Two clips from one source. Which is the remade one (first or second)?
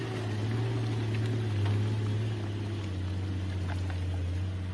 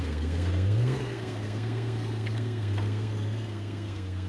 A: second